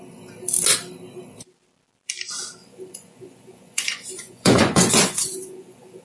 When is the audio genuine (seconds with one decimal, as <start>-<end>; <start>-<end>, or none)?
0.0-2.6